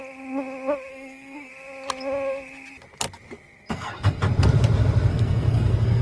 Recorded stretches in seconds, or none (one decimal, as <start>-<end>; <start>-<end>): 0.0-0.9; 1.5-3.7; 4.2-5.1